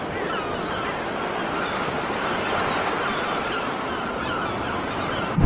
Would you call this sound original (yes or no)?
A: yes